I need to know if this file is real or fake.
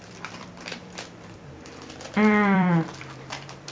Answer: fake